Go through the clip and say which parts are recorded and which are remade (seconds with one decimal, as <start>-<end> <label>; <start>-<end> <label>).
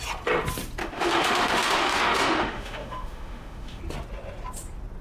0.0-0.8 recorded; 0.8-3.8 remade; 3.8-5.0 recorded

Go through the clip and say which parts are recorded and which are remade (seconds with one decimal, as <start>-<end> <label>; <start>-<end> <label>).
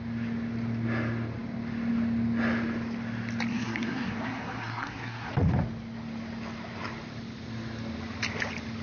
0.0-3.5 recorded; 3.5-5.3 remade; 5.3-8.8 recorded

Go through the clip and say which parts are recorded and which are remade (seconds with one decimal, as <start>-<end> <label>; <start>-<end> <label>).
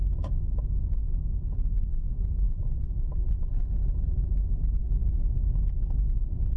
0.0-6.6 recorded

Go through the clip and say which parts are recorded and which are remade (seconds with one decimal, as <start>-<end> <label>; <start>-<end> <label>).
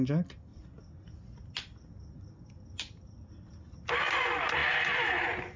0.0-5.6 recorded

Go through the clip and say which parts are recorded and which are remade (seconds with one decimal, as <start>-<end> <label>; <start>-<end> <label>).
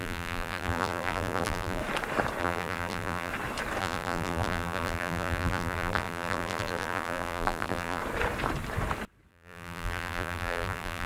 0.0-1.8 remade; 1.8-2.4 recorded; 2.4-3.3 remade; 3.3-3.8 recorded; 3.8-8.0 remade; 8.0-9.3 recorded; 9.3-11.1 remade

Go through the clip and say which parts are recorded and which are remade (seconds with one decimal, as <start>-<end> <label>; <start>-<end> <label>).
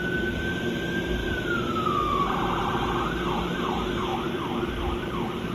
0.0-5.5 recorded